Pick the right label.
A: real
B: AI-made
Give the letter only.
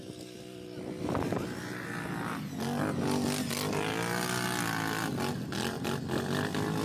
A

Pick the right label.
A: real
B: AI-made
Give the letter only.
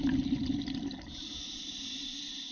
A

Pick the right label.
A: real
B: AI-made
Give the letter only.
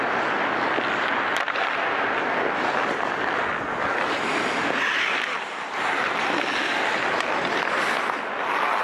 A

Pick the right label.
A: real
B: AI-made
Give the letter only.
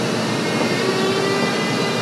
A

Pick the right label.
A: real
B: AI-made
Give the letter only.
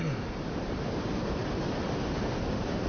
B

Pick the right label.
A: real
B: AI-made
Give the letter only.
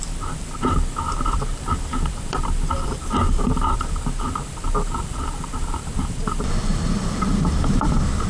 B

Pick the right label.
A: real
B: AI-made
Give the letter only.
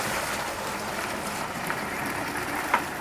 A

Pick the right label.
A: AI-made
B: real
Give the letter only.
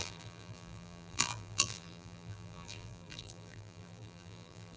A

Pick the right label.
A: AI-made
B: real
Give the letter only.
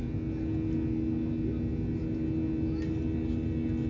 B